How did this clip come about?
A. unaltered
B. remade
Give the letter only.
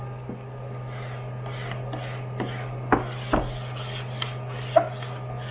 A